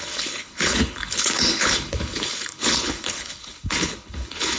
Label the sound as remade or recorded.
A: remade